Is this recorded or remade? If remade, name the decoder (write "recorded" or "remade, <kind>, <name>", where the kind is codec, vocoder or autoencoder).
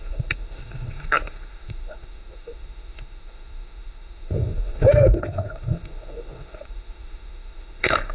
remade, autoencoder, DAC-VAE